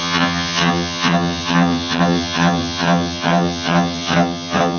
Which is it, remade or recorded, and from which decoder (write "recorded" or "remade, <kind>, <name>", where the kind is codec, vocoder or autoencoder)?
remade, vocoder, HiFi-GAN